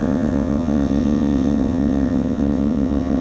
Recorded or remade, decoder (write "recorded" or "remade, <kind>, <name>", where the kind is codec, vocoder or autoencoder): remade, vocoder, WaveNeXt